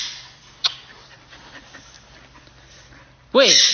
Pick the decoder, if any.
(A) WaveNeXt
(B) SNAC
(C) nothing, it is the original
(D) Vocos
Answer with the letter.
C